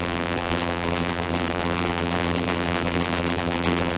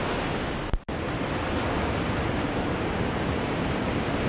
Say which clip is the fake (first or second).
first